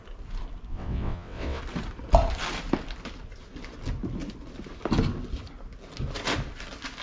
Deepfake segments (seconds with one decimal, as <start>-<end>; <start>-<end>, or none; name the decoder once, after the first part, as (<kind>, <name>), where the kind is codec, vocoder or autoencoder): 0.7-1.6 (vocoder, WaveNeXt)